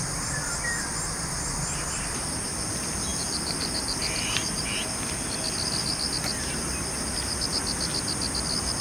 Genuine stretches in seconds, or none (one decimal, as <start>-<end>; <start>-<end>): 0.0-3.1; 4.4-8.8